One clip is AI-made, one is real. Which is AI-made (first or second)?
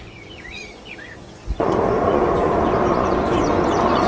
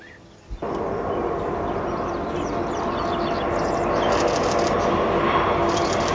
first